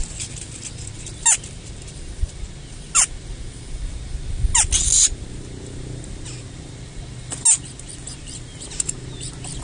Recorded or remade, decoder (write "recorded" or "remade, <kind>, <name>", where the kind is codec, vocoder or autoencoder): recorded